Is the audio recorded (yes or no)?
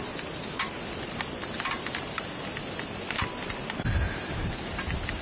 yes